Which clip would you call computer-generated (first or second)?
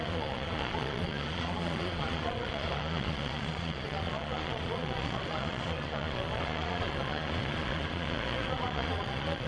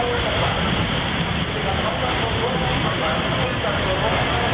first